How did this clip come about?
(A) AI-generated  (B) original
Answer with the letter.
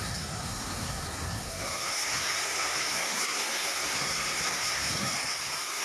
A